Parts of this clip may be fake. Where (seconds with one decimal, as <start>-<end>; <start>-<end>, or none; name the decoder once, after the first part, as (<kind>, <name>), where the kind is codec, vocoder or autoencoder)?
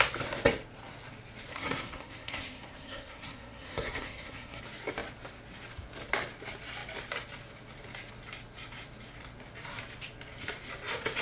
1.5-4.6 (codec, SNAC)